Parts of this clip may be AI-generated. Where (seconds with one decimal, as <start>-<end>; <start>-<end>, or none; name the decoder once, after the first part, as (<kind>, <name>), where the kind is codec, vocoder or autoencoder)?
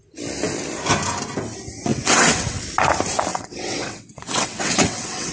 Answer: 1.9-2.6 (vocoder, WaveNeXt); 3.3-5.3